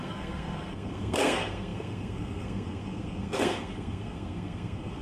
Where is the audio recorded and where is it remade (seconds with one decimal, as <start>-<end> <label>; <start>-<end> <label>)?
0.0-5.0 remade